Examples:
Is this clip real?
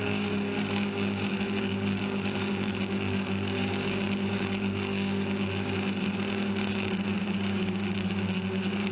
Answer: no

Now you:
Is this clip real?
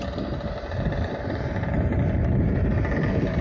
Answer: no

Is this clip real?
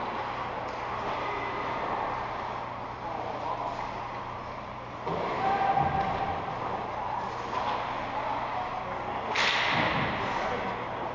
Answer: yes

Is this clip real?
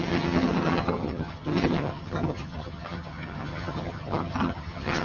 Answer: no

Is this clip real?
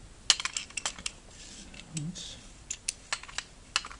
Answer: yes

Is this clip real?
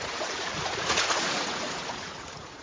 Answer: no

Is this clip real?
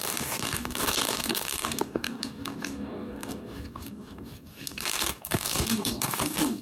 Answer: no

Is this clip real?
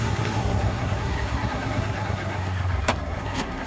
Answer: no